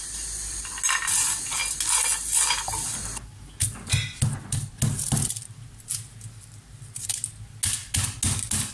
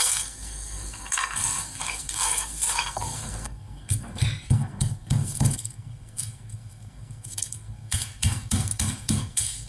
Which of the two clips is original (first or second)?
first